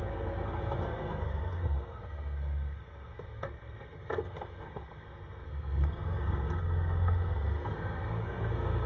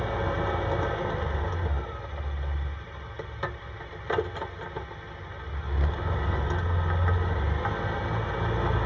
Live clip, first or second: second